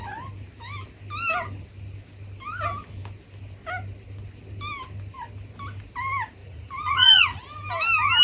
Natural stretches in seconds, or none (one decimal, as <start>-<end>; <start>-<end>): 0.0-6.4; 7.4-8.2